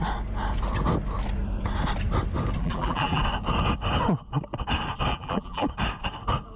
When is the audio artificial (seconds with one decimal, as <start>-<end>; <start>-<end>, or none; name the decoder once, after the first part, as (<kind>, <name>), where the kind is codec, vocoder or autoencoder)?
2.6-3.2 (vocoder, BigVGAN v2); 5.1-5.7